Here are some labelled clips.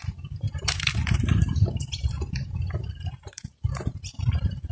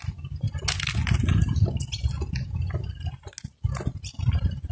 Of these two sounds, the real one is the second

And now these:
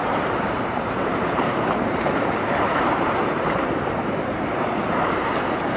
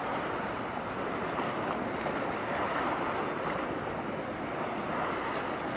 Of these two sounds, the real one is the second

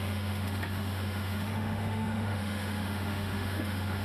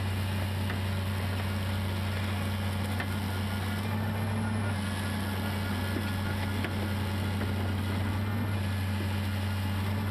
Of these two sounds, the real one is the second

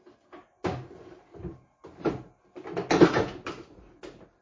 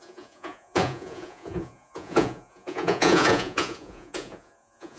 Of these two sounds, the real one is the first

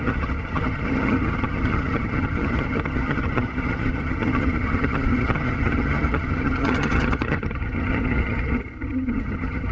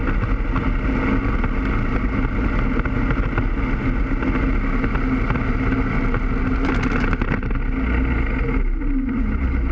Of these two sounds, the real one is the second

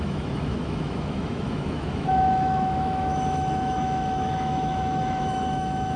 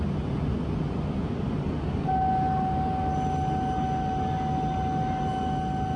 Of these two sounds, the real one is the second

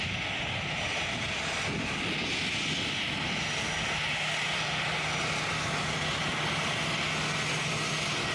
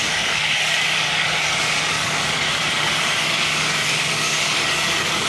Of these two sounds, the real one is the first